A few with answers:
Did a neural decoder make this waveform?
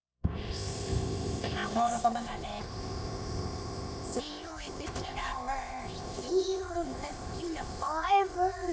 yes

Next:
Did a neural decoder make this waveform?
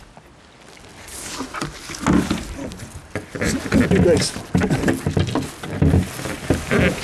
no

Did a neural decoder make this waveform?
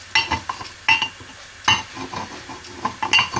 no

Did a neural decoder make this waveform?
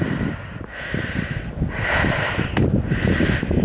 no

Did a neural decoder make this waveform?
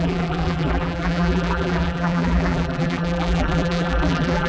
yes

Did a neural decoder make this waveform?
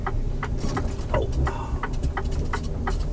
no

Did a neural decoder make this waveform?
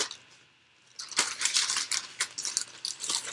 no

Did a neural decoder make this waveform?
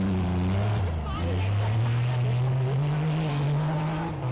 no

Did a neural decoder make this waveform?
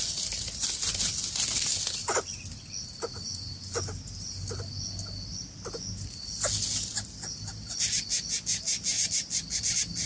no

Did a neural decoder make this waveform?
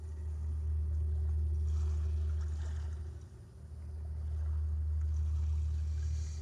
no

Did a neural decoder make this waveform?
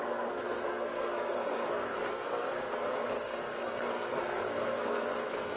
yes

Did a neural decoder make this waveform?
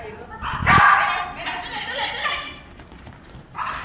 no